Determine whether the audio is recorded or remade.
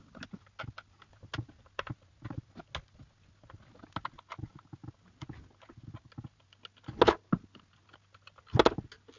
recorded